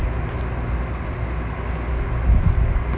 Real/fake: real